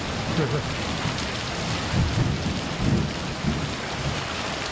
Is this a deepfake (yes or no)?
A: no